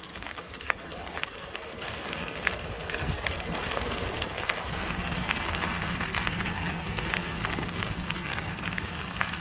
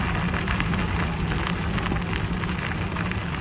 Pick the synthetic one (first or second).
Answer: first